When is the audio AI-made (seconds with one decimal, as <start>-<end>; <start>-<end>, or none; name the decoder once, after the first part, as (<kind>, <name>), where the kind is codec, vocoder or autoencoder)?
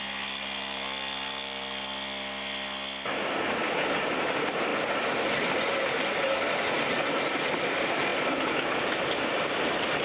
none